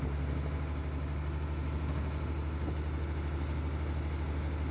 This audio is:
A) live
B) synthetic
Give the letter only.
A